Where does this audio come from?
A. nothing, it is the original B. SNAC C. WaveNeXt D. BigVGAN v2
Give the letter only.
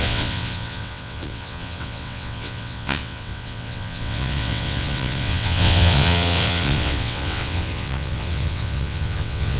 C